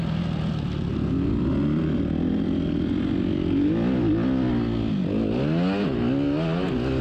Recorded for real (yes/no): yes